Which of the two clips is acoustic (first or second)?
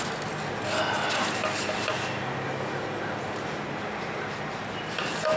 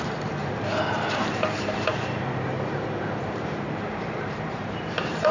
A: first